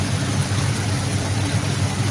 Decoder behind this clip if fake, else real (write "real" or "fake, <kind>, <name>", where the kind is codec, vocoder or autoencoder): real